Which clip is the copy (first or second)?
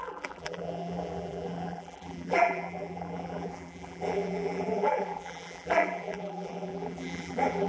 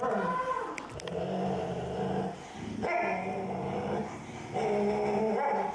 first